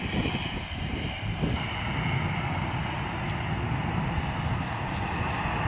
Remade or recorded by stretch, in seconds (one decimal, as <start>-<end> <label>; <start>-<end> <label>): 0.0-5.7 recorded